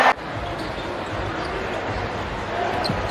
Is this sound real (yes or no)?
yes